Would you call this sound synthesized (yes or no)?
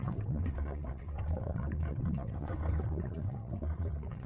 yes